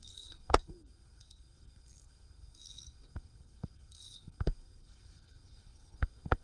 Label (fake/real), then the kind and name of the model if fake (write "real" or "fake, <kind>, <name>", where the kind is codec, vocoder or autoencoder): fake, codec, SNAC